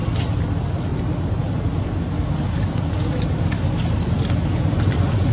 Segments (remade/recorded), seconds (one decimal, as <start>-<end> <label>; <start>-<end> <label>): 0.0-0.9 remade; 0.9-1.7 recorded; 1.7-5.3 remade